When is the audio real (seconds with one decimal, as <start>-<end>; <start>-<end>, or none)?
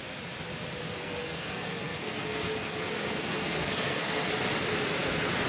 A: 0.0-1.0; 4.3-5.5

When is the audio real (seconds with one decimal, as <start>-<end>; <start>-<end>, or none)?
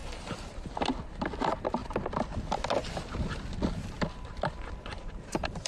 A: 0.9-4.9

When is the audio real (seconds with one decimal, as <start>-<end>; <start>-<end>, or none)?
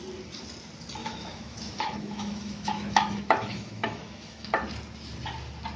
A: 0.0-1.0; 4.5-5.8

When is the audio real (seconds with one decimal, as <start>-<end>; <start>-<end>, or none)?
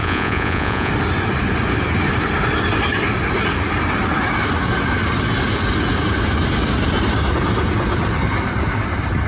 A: 0.9-9.3